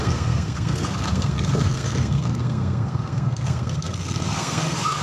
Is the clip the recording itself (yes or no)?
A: no